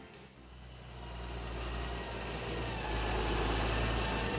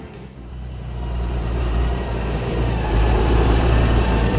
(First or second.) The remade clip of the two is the second